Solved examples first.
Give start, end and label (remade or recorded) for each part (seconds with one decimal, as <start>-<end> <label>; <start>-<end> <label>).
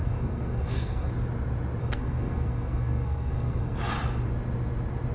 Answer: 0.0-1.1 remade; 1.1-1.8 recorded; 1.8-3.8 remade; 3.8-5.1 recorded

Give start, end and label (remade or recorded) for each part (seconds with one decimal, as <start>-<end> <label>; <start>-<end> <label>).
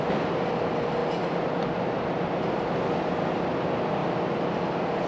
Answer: 0.0-5.1 recorded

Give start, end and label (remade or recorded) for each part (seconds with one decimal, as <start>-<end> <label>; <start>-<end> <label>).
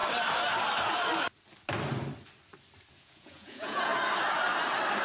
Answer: 0.0-2.9 recorded; 2.9-3.9 remade; 3.9-5.0 recorded